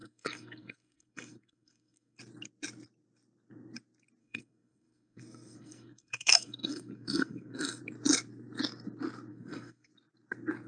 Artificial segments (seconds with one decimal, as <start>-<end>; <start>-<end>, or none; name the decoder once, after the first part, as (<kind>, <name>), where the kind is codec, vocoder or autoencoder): 0.0-2.2 (codec, SNAC); 4.2-7.8; 9.3-9.9

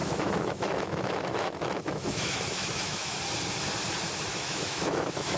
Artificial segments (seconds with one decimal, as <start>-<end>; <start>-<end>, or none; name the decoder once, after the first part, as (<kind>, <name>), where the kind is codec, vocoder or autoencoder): 0.0-3.2 (autoencoder, DAC-VAE); 4.3-5.4

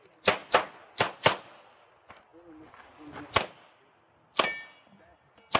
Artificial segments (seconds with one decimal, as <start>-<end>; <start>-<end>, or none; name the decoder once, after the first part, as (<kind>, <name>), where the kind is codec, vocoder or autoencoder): none